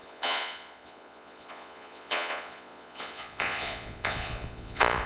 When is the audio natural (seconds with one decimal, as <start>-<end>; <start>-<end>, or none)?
none